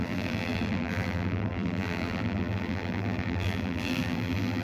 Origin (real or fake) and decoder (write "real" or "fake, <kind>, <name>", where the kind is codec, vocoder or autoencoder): fake, vocoder, BigVGAN v2